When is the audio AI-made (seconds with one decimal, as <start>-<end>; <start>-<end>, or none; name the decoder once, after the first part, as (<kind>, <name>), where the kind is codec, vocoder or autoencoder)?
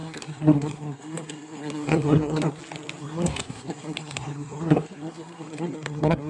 0.0-2.6 (codec, SNAC); 3.0-6.3